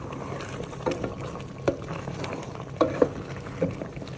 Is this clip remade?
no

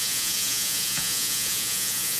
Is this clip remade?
yes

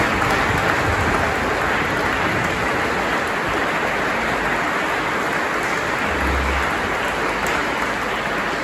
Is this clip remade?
no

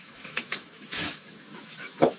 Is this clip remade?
yes